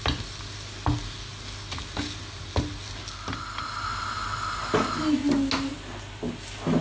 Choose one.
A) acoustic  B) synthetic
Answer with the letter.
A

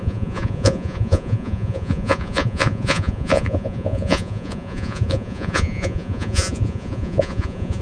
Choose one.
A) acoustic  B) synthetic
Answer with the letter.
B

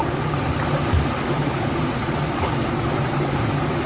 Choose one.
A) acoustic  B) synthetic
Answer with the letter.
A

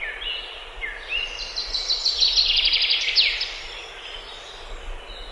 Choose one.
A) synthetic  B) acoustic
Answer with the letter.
B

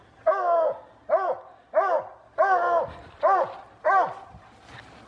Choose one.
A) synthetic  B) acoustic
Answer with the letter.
B